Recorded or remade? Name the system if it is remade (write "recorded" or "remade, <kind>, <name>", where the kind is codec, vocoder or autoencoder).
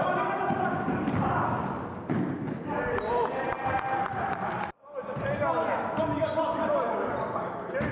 remade, vocoder, BigVGAN v2